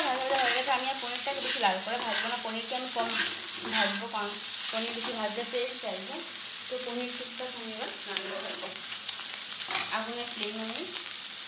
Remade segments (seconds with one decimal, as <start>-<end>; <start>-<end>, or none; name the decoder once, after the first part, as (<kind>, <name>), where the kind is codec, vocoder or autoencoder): 8.1-9.2 (vocoder, Vocos)